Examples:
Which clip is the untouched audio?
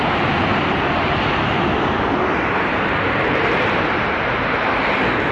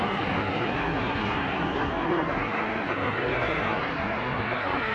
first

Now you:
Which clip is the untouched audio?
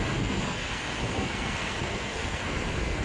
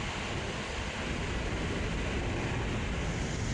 second